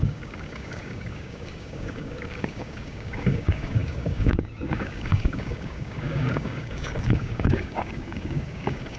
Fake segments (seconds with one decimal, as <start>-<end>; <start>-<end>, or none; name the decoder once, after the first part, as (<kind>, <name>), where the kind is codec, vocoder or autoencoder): 0.0-9.0 (codec, DAC)